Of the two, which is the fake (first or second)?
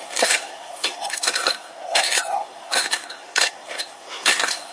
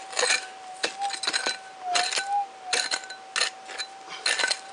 first